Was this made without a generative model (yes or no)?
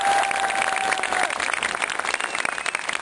yes